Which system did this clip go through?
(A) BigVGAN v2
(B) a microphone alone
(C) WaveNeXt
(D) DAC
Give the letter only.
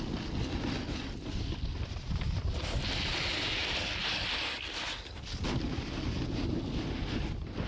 B